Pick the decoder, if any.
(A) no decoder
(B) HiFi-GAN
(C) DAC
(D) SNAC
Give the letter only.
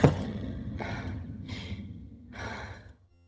B